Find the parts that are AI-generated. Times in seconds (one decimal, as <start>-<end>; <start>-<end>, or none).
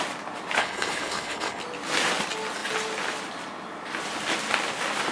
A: 0.6-1.6